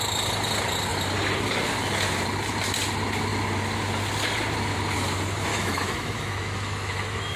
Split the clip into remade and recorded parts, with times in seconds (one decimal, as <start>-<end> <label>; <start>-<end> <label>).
0.0-5.5 recorded; 5.5-7.4 remade